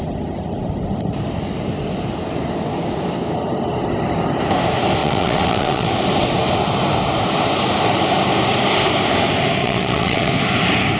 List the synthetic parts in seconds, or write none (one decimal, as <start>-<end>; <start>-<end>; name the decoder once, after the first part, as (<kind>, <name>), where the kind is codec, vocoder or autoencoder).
5.0-5.9 (vocoder, WaveNeXt); 9.6-10.3